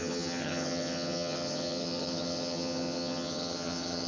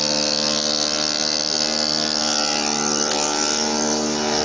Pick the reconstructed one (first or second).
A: first